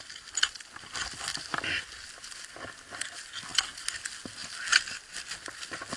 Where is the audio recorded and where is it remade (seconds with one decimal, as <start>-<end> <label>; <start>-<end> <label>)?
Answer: 0.0-6.0 recorded